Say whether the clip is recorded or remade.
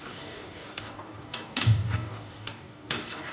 remade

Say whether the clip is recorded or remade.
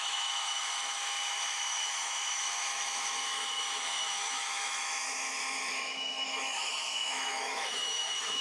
remade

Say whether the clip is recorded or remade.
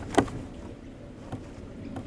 recorded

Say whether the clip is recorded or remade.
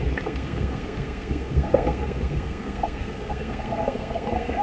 remade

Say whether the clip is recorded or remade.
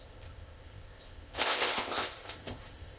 remade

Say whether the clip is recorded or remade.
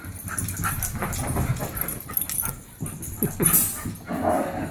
recorded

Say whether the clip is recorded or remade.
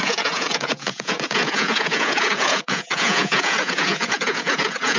remade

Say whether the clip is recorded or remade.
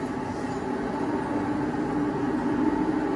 recorded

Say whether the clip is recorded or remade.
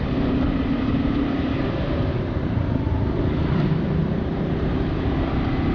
remade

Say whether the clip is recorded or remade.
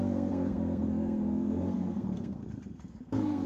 remade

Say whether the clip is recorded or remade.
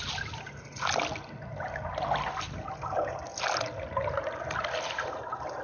recorded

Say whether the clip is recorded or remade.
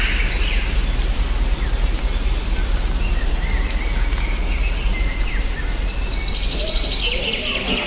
recorded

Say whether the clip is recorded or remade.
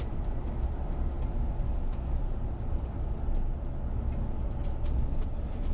recorded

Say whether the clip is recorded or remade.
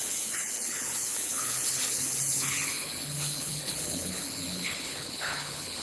remade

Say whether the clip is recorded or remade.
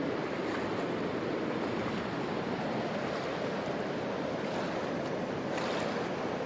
recorded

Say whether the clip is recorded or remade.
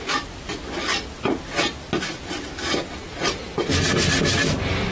recorded